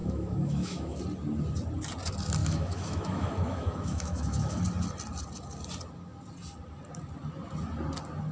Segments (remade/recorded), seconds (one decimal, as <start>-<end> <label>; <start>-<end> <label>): 0.0-1.0 remade; 1.0-2.4 recorded; 2.4-4.6 remade; 4.6-8.3 recorded